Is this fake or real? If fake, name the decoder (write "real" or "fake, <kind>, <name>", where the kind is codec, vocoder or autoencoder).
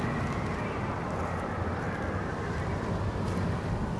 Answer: real